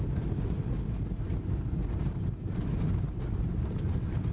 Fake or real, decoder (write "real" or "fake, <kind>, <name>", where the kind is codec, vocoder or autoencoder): real